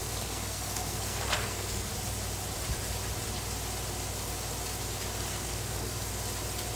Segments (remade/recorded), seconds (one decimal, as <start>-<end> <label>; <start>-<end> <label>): 0.0-1.9 remade; 1.9-5.3 recorded; 5.3-6.1 remade; 6.1-6.8 recorded